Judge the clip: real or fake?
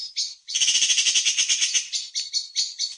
real